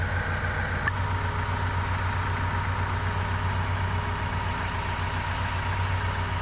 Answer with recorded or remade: recorded